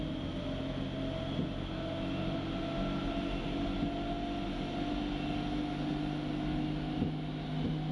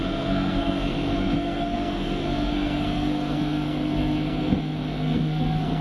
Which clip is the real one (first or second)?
first